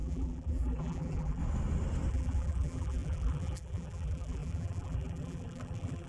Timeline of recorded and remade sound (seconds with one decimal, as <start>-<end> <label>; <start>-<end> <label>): 0.0-1.4 remade; 1.4-2.1 recorded; 2.1-6.1 remade